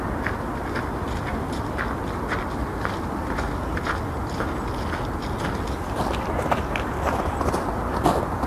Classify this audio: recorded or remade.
recorded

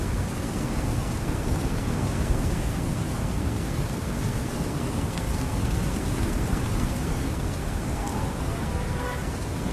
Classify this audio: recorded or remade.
remade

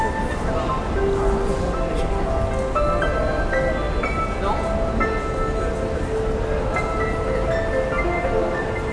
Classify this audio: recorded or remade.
recorded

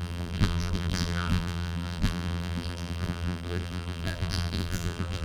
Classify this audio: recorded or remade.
remade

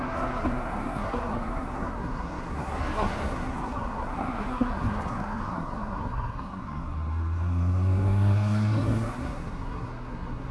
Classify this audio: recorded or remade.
remade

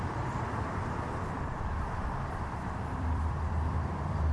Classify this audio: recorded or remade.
remade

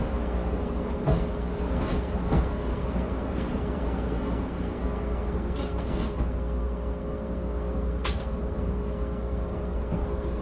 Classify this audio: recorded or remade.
remade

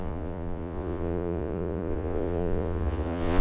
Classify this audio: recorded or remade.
remade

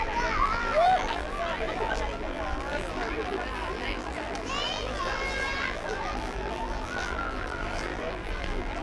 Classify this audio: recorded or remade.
remade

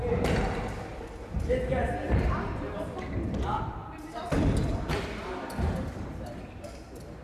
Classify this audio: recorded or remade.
remade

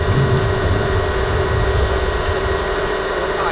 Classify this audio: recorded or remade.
recorded